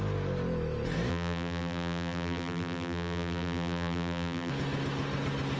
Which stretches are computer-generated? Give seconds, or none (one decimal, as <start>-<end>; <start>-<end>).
1.1-4.5